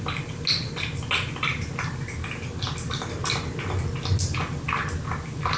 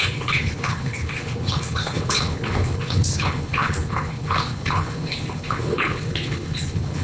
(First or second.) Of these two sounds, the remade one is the second